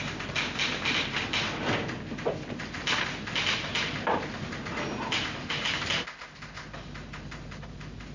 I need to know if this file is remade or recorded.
recorded